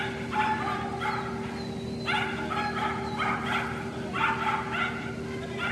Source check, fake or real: real